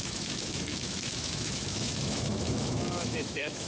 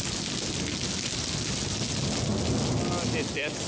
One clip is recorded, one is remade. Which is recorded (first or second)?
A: second